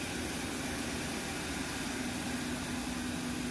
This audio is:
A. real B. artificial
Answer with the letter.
A